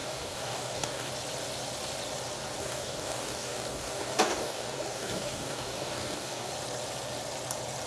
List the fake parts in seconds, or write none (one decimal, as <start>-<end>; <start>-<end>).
0.0-1.1; 2.6-6.5